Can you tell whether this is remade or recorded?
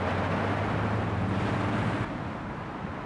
recorded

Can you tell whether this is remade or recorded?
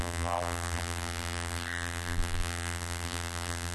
remade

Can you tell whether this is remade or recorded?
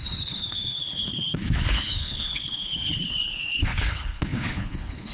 remade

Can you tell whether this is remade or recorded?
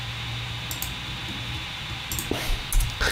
recorded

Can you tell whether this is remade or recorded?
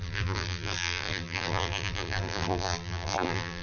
remade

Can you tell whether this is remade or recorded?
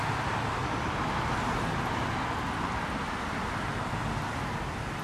recorded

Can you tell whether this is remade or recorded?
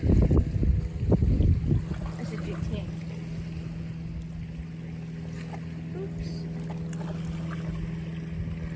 recorded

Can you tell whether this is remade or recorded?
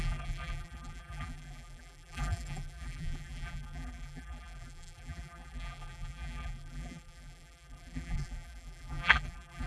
remade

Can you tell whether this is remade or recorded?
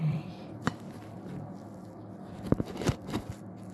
remade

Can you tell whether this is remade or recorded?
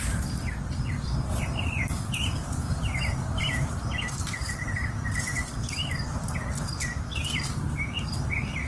remade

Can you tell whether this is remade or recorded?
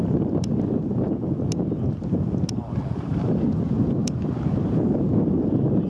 recorded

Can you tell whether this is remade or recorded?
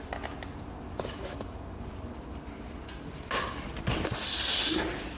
recorded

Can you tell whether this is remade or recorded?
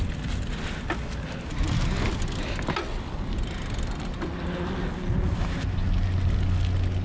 recorded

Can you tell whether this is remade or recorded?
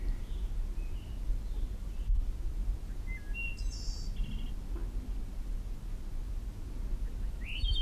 recorded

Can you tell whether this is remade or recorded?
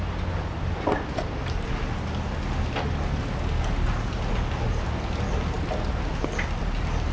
recorded